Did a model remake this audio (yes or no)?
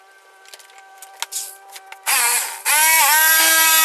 no